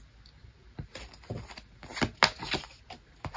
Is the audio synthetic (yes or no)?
no